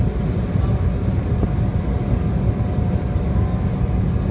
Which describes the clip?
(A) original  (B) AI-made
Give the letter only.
A